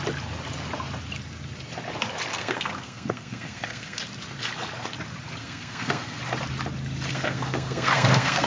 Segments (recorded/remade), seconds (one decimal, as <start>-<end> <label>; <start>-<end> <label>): 0.0-2.3 recorded; 2.3-4.0 remade; 4.0-5.4 recorded; 5.4-6.2 remade; 6.2-7.1 recorded; 7.1-8.5 remade